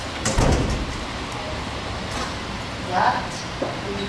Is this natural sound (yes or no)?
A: no